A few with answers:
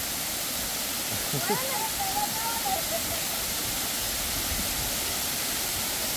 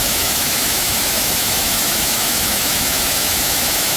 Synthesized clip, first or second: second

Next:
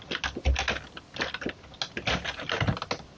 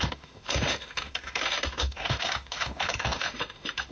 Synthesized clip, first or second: second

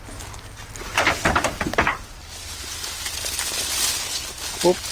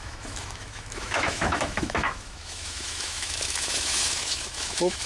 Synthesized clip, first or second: second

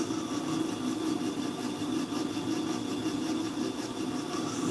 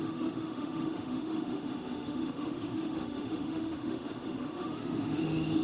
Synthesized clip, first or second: second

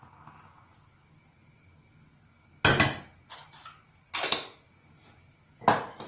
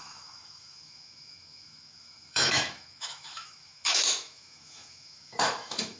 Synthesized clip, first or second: second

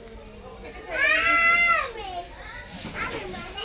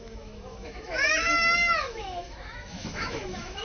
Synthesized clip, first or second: second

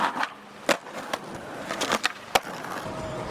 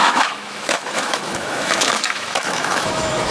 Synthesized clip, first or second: second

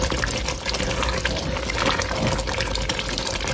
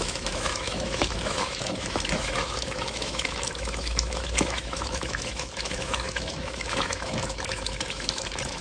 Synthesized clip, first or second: second